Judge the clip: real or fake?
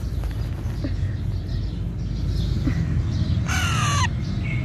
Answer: real